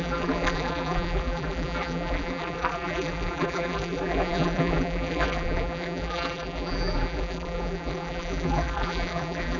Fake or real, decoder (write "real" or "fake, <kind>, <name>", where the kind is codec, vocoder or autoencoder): fake, vocoder, BigVGAN v2